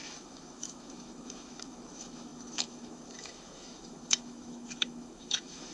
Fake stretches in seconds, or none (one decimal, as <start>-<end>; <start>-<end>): 0.0-5.7